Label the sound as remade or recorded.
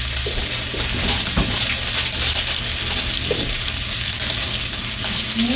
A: recorded